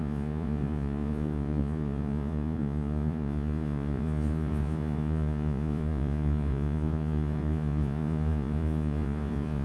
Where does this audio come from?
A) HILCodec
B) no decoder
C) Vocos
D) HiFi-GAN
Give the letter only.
C